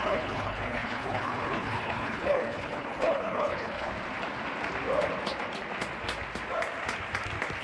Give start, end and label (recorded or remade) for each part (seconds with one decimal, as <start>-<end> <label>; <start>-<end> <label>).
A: 0.0-3.9 remade; 3.9-7.6 recorded